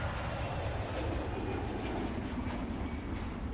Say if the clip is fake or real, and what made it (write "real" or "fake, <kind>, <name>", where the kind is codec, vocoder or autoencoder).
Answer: real